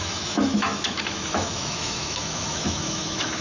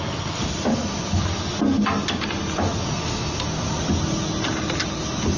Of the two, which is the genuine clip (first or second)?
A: second